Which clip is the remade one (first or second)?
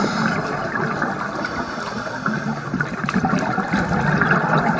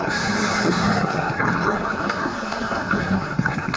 second